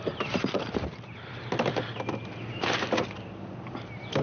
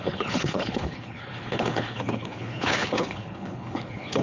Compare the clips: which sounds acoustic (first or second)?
first